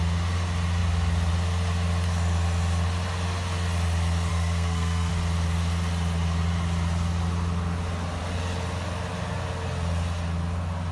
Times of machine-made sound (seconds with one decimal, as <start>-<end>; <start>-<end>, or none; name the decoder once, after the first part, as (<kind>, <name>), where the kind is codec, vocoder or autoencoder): 4.3-5.1 (codec, SNAC)